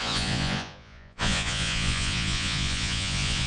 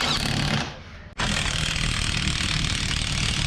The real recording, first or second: second